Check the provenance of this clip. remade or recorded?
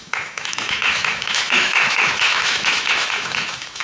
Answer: remade